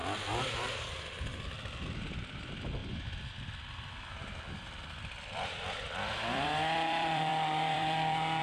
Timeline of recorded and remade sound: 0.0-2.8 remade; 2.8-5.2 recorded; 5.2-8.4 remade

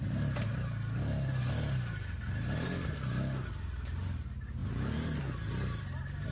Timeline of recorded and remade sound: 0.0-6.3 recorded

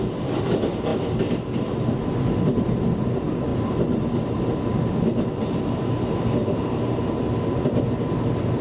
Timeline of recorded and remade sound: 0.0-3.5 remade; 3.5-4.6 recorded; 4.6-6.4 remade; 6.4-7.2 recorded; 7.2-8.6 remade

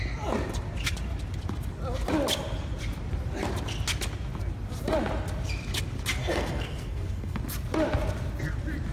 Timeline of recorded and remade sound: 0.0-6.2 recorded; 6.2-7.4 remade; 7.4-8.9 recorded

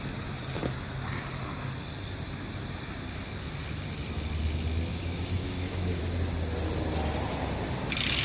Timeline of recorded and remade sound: 0.0-4.9 recorded; 4.9-6.0 remade; 6.0-8.2 recorded

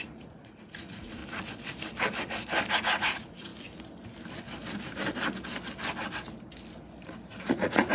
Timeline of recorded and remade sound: 0.0-1.2 remade; 1.2-2.7 recorded; 2.7-3.5 remade; 3.5-7.4 recorded; 7.4-7.9 remade

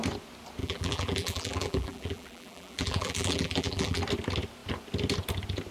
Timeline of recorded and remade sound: 0.0-0.6 recorded; 0.6-4.0 remade; 4.0-5.7 recorded

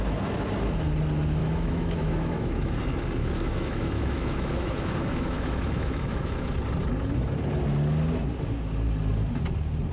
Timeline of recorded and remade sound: 0.0-1.4 recorded; 1.4-2.8 remade; 2.8-3.2 recorded; 3.2-6.5 remade; 6.5-9.9 recorded